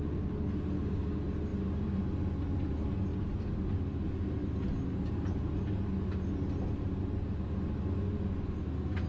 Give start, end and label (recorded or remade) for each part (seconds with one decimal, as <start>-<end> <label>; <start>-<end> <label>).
0.0-9.1 recorded